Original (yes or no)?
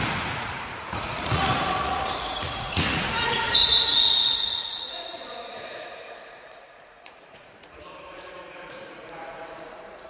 no